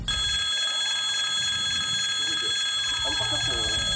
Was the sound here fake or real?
real